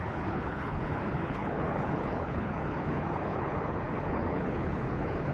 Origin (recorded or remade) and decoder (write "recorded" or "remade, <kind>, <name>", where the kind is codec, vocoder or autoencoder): remade, codec, HILCodec